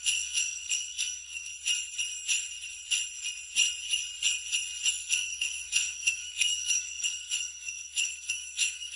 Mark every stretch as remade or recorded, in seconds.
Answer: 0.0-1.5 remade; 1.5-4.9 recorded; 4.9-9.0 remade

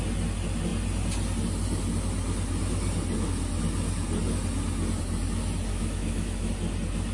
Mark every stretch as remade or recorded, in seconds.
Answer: 0.0-5.7 recorded; 5.7-6.5 remade; 6.5-7.1 recorded